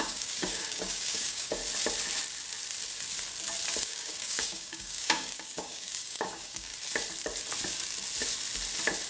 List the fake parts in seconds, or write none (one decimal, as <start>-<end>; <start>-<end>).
0.0-1.6; 3.8-6.7